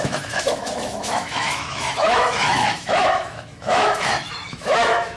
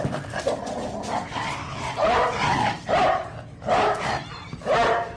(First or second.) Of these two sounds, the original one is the second